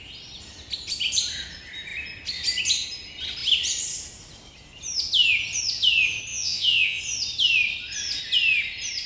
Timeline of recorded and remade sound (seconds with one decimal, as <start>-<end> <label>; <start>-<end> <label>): 0.0-6.3 recorded; 6.3-7.0 remade; 7.0-9.1 recorded